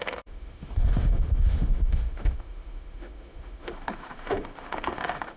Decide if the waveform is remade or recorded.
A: remade